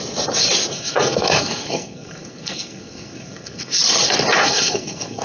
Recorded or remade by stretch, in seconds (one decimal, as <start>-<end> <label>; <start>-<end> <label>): 0.0-0.7 recorded; 0.7-3.8 remade; 3.8-4.4 recorded; 4.4-5.2 remade